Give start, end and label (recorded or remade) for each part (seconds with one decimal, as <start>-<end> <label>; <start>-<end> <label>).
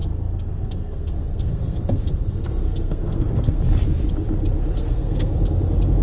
0.0-3.6 remade; 3.6-4.8 recorded; 4.8-5.3 remade; 5.3-6.0 recorded